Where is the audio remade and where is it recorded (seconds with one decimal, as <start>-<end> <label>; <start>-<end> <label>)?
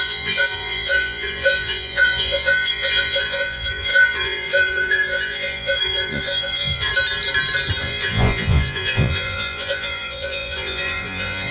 0.0-6.9 remade; 6.9-7.8 recorded; 7.8-11.5 remade